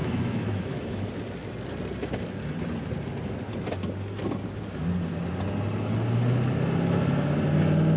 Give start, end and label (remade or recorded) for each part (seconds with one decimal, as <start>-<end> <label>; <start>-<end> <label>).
0.0-1.1 remade; 1.1-8.0 recorded